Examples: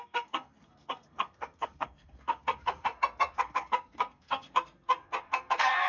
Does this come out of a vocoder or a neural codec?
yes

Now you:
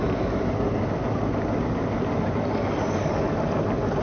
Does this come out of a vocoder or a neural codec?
no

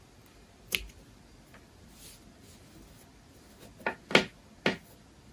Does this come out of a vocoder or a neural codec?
no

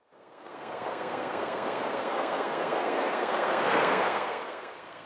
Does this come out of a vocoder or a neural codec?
yes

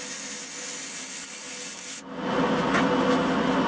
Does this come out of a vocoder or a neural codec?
no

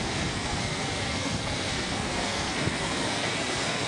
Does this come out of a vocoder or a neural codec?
yes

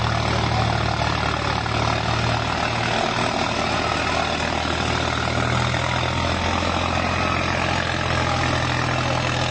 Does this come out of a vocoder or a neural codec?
no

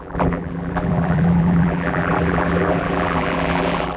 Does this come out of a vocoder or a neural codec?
yes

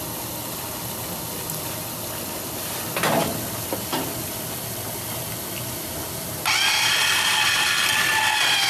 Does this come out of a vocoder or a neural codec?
no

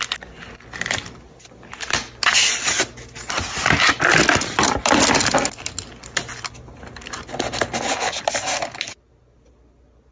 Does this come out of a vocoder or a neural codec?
no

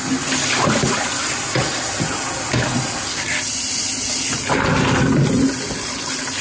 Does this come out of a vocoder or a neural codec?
no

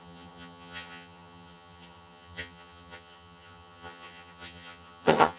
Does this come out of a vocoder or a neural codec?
yes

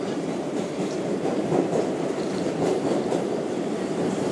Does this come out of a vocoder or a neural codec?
yes